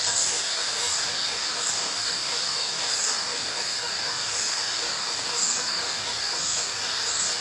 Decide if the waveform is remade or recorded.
remade